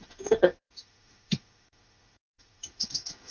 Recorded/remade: remade